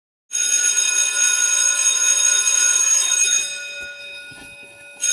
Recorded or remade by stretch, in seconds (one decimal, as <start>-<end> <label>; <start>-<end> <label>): 0.0-2.8 recorded; 2.8-3.4 remade; 3.4-4.0 recorded; 4.0-5.1 remade